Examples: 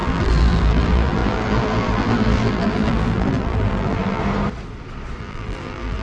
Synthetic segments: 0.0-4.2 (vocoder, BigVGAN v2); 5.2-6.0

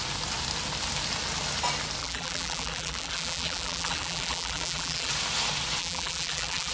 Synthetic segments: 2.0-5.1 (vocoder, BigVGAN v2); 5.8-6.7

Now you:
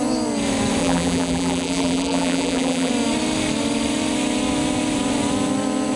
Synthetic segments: 0.8-2.9 (vocoder, BigVGAN v2)